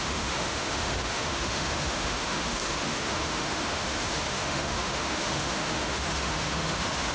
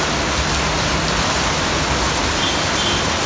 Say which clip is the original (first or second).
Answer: second